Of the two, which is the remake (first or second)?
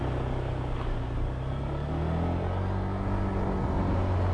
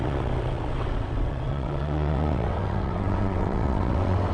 second